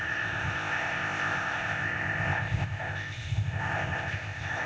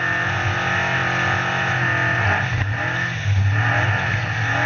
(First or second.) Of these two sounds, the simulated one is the first